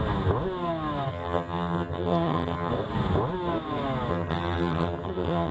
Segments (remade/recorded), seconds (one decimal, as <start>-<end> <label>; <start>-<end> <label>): 0.0-1.1 recorded; 1.1-2.7 remade; 2.7-4.1 recorded; 4.1-5.5 remade